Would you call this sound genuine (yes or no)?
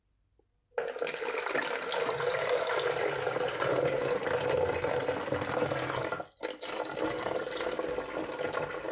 yes